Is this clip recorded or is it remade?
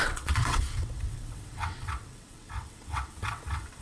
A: remade